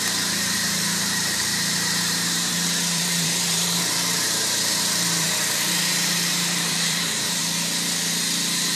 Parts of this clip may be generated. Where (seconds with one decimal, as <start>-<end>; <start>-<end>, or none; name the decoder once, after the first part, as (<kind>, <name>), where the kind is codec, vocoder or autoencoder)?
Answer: 0.0-7.4 (vocoder, BigVGAN v2)